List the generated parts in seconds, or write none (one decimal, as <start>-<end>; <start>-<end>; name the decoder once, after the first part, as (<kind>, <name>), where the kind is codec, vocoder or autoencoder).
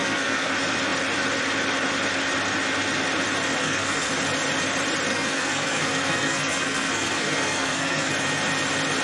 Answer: 0.0-0.5 (codec, SNAC); 3.6-4.1; 5.1-8.1